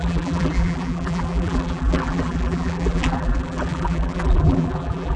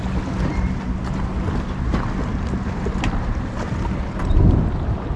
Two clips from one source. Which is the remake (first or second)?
first